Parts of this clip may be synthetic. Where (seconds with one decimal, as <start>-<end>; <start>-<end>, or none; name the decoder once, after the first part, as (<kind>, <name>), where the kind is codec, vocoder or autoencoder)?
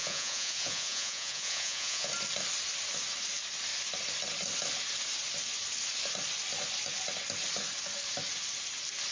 0.0-2.1 (vocoder, Vocos)